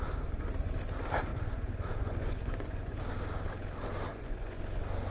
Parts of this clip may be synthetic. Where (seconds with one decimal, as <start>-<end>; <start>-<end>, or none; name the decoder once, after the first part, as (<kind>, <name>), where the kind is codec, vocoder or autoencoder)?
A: 1.3-3.0 (vocoder, Vocos); 4.1-4.6